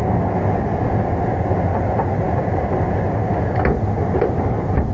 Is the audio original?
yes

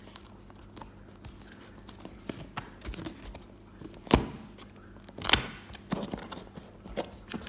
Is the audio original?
yes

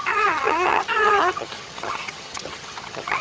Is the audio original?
no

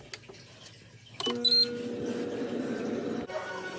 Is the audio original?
yes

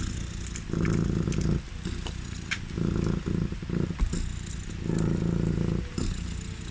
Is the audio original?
yes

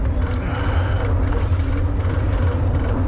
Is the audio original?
yes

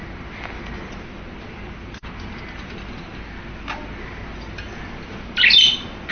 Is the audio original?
yes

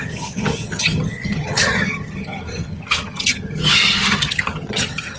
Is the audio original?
no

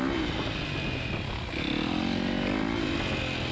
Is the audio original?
yes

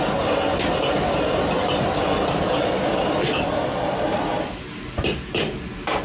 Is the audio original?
yes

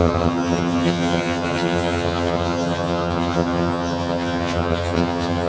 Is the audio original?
no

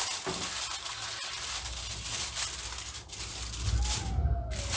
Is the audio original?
yes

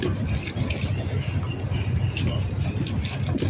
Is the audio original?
yes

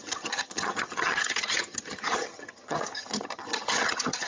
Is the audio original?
no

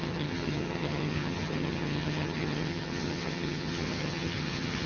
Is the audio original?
no